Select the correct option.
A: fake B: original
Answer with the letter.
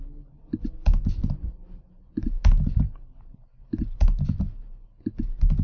B